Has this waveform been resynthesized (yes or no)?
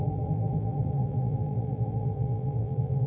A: yes